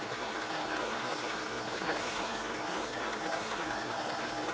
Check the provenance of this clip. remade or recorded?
remade